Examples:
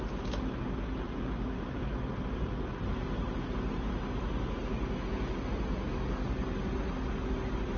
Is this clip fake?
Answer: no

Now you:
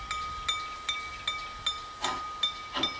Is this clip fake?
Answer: no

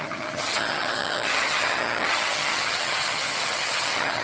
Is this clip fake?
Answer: yes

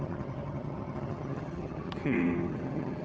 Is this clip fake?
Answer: yes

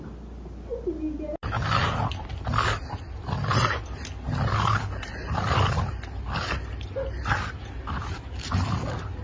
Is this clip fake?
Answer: no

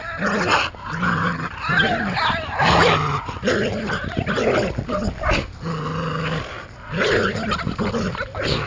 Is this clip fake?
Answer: no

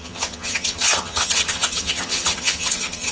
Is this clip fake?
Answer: yes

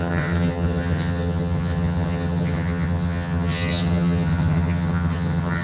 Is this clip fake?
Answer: yes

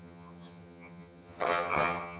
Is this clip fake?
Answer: yes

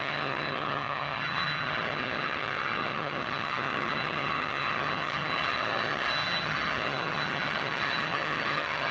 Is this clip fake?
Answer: yes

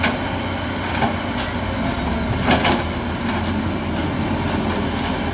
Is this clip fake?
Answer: no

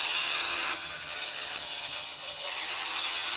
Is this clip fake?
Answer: yes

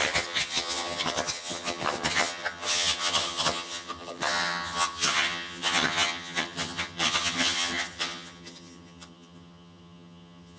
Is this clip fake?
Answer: yes